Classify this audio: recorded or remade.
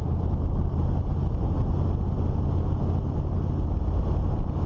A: recorded